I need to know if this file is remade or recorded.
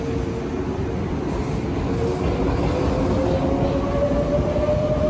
recorded